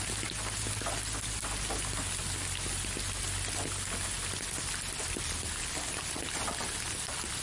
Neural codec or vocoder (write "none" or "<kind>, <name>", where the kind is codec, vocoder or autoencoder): none